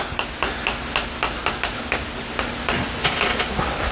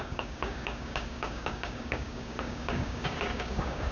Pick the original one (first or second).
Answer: first